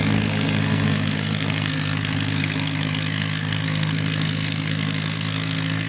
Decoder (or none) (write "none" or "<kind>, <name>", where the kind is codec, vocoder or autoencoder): codec, SNAC